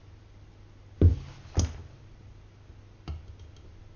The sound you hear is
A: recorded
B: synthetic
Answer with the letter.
A